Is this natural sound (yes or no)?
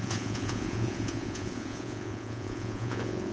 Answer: no